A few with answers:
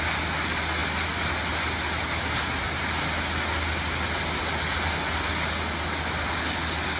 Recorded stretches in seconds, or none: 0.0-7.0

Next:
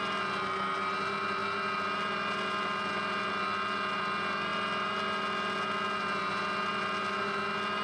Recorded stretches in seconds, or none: 0.0-7.8

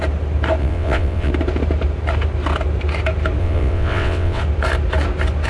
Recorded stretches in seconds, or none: 0.0-0.6; 1.3-3.4; 4.4-5.5

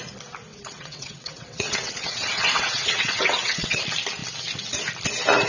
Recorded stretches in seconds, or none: 0.0-0.5; 3.8-5.5

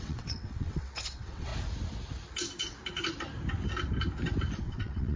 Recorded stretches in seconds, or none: 1.5-4.6

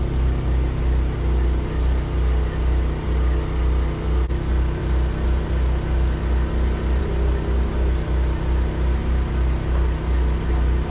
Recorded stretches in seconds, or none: 0.0-10.9